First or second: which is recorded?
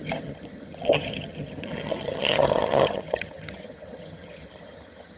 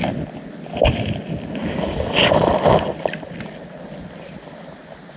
second